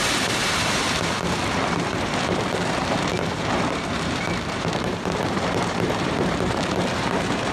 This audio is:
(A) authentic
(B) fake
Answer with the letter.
B